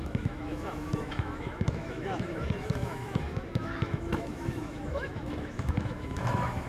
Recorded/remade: remade